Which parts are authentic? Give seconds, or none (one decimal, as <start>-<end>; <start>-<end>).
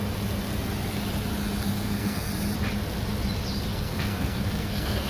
0.0-1.7; 2.3-3.7